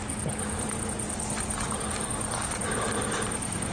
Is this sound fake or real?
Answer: real